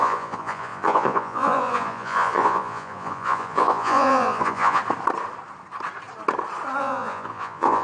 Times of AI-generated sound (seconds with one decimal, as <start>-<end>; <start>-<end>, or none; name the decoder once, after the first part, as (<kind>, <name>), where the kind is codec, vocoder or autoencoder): 0.0-4.8 (vocoder, Vocos); 6.8-7.8